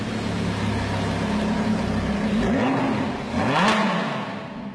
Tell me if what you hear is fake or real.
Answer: real